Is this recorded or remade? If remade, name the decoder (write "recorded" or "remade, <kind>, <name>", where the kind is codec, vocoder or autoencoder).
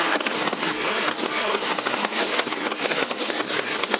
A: remade, codec, SNAC